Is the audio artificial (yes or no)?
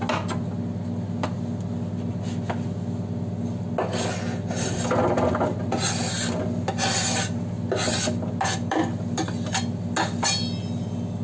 no